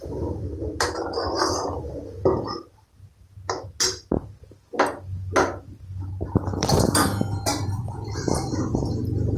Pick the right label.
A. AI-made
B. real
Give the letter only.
B